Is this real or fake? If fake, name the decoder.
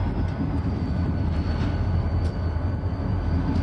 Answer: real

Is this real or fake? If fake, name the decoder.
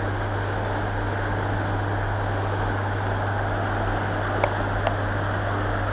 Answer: real